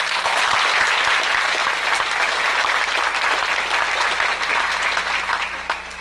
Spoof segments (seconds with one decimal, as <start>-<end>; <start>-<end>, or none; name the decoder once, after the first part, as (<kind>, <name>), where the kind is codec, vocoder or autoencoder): none